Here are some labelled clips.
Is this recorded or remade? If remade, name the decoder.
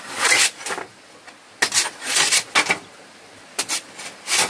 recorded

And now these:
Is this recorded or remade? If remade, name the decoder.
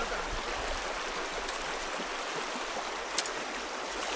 recorded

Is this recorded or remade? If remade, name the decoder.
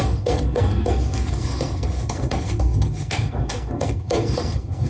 remade, codec, SNAC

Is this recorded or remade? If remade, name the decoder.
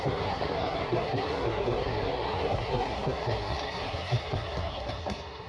remade, codec, SNAC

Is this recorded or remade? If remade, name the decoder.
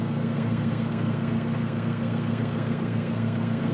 remade, codec, SNAC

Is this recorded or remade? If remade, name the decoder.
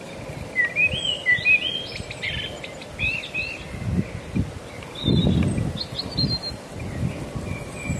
recorded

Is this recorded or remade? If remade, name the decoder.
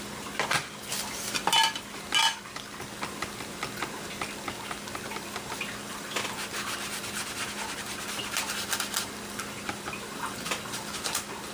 recorded